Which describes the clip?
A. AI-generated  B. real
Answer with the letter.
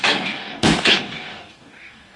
A